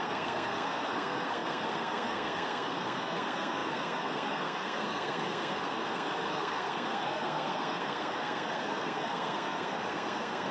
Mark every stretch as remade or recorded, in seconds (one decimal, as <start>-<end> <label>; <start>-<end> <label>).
0.0-10.5 remade

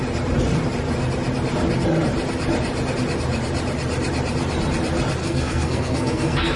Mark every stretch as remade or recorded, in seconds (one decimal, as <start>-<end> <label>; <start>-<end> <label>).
0.0-5.2 recorded; 5.2-6.6 remade